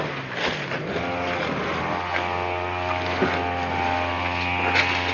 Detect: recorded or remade recorded